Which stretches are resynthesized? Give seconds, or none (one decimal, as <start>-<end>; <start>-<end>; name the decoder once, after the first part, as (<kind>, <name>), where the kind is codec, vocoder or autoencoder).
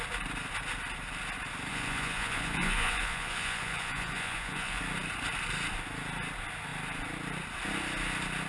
1.7-4.8 (vocoder, Vocos)